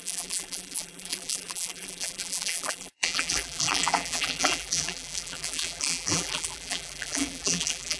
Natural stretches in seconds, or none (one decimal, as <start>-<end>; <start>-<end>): none